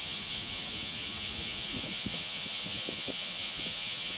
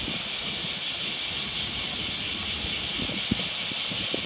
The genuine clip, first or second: second